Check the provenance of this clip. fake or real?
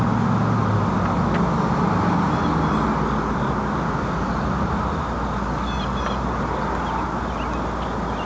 real